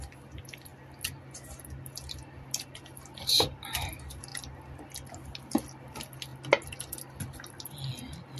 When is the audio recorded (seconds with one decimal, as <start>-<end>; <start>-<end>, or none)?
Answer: 0.0-8.4